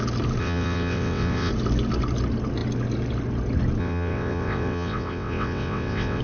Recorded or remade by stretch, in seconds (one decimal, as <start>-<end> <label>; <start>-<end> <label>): 0.0-0.4 recorded; 0.4-1.5 remade; 1.5-3.8 recorded; 3.8-6.2 remade